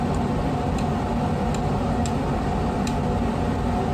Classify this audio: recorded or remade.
recorded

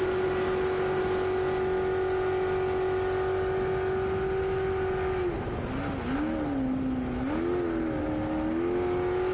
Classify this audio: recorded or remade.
recorded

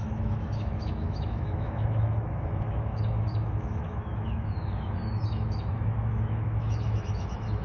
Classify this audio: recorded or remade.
remade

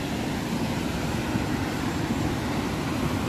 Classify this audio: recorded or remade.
recorded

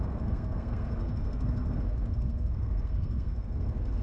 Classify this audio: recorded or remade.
remade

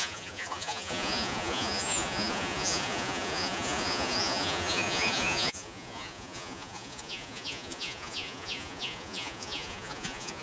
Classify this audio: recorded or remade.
remade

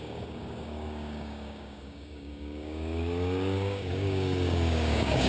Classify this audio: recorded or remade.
remade